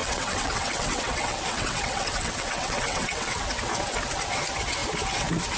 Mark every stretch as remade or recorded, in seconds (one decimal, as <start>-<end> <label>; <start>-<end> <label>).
0.0-3.4 remade; 3.4-5.6 recorded